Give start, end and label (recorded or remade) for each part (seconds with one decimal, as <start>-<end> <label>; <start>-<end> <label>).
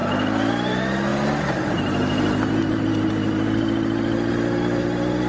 0.0-5.3 recorded